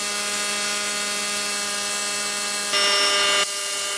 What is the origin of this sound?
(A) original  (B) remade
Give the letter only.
A